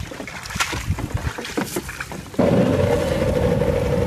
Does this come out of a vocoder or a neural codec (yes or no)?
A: no